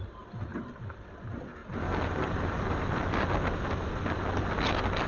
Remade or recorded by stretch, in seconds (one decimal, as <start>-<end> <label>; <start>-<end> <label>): 0.0-5.1 recorded